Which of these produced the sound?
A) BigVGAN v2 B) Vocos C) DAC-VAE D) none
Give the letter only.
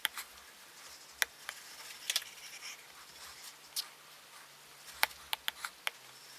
D